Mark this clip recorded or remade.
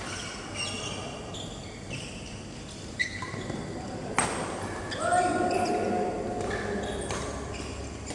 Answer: recorded